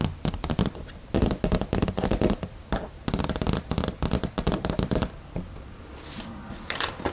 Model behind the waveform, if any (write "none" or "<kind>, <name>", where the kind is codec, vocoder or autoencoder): none